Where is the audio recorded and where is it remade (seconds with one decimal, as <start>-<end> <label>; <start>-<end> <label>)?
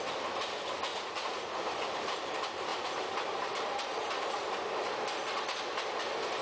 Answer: 0.0-0.9 recorded; 0.9-1.6 remade; 1.6-6.4 recorded